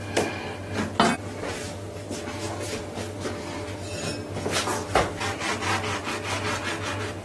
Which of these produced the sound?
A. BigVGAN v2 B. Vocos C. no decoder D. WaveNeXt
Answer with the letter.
C